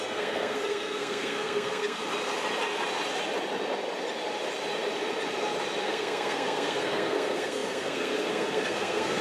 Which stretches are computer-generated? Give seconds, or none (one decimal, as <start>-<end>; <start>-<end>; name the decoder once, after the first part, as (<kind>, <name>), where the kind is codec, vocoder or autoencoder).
0.0-2.0 (codec, SNAC); 5.8-9.2